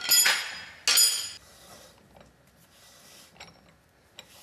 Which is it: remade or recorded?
recorded